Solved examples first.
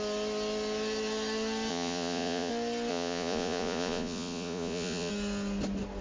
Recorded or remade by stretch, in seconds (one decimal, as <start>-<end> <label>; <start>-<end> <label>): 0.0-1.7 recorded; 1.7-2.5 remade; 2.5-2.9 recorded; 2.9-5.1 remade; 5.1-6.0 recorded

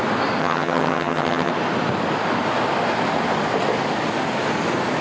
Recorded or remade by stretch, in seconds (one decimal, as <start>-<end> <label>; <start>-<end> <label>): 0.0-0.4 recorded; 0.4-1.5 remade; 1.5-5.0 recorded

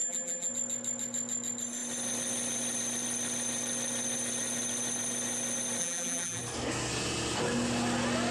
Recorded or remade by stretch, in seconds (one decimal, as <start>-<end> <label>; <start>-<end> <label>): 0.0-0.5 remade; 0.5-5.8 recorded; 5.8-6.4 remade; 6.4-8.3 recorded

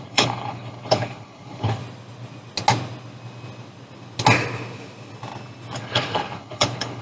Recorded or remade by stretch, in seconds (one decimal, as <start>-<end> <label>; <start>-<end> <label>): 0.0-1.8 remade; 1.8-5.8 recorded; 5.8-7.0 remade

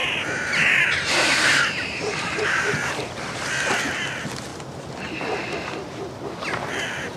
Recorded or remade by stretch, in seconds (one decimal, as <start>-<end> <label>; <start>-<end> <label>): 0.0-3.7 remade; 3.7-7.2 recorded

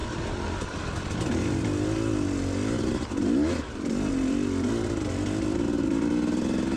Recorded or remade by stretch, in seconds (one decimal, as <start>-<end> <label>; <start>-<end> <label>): 0.0-4.1 remade; 4.1-6.8 recorded

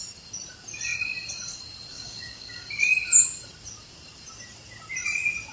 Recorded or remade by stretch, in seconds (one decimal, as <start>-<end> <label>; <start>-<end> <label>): 0.0-1.9 recorded; 1.9-2.7 remade; 2.7-5.5 recorded

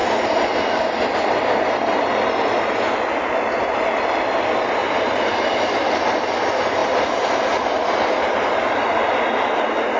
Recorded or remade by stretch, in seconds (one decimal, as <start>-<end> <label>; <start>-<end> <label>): 0.0-4.8 recorded; 4.8-5.4 remade; 5.4-10.0 recorded